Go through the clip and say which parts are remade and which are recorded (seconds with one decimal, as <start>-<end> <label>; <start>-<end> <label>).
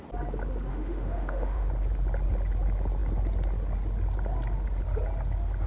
0.0-0.7 recorded; 0.7-1.7 remade; 1.7-5.7 recorded